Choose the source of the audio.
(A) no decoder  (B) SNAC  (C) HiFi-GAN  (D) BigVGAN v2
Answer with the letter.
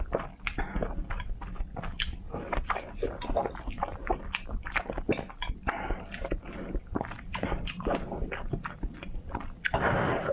A